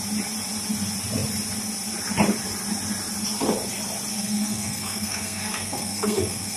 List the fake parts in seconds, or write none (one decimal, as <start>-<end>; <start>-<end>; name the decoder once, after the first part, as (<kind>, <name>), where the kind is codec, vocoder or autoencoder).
4.1-6.6 (codec, SNAC)